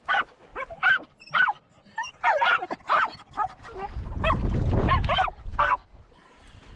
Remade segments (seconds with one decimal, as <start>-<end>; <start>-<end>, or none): 5.5-6.0